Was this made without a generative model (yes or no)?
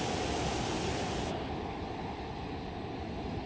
yes